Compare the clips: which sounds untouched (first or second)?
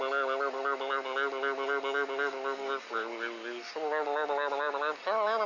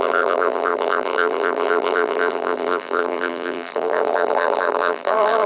first